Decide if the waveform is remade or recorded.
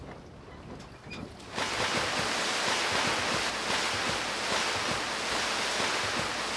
recorded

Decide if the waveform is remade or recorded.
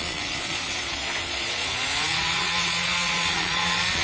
remade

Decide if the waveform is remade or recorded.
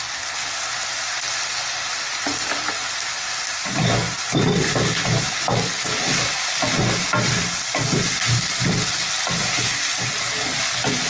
recorded